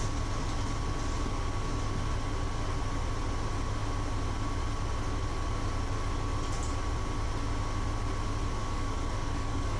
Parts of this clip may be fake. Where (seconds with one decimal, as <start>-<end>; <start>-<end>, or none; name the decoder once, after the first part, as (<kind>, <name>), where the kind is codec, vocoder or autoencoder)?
8.6-9.8 (codec, DAC)